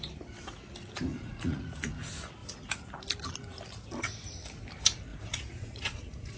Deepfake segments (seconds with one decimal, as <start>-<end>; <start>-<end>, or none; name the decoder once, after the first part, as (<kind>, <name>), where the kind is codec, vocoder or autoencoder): 1.1-1.9 (vocoder, Vocos); 5.1-6.4